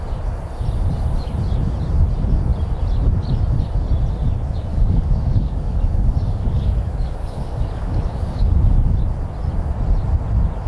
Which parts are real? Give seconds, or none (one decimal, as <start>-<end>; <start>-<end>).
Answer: 0.0-4.7; 8.4-10.7